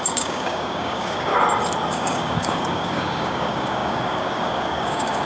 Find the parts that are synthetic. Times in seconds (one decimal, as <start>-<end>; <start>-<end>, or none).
0.0-1.3; 1.9-5.3